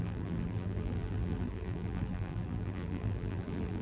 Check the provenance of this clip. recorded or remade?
remade